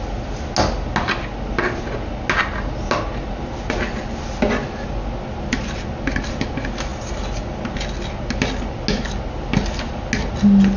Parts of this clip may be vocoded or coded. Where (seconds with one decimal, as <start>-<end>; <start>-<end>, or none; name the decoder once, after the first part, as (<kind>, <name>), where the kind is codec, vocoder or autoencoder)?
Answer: none